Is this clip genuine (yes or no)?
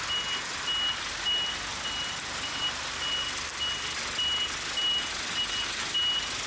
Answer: yes